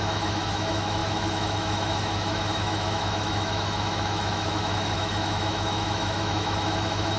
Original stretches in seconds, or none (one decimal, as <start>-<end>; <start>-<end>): none